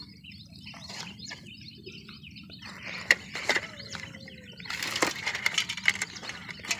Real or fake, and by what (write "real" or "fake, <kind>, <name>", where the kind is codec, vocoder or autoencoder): fake, vocoder, BigVGAN v2